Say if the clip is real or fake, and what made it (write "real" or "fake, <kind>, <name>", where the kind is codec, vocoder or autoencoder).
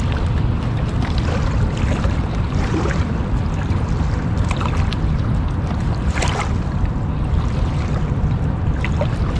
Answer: fake, vocoder, BigVGAN v2